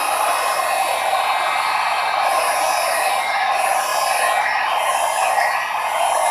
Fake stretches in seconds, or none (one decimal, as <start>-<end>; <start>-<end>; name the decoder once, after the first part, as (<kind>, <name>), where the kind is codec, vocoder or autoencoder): none